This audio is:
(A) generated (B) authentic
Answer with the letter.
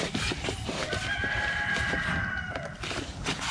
B